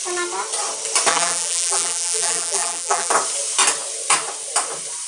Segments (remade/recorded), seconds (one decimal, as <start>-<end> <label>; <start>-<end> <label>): 0.0-1.1 recorded; 1.1-3.1 remade; 3.1-5.1 recorded

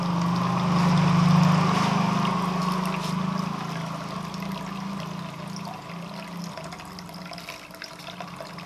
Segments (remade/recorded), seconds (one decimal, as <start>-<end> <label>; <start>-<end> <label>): 0.0-8.7 recorded

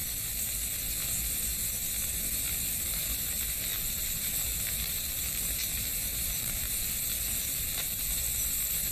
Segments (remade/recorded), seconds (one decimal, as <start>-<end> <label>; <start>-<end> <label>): 0.0-3.7 recorded; 3.7-8.2 remade; 8.2-8.9 recorded

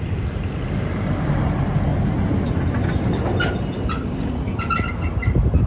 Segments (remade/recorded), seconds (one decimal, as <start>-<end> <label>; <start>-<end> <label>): 0.0-1.9 remade; 1.9-4.9 recorded; 4.9-5.7 remade

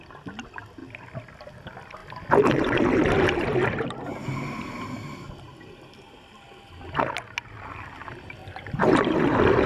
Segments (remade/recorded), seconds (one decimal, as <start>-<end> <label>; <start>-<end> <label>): 0.0-8.4 recorded; 8.4-9.2 remade; 9.2-9.7 recorded